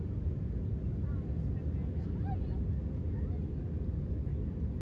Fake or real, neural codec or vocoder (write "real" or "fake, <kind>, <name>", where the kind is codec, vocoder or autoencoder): real